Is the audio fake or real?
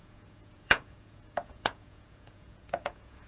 fake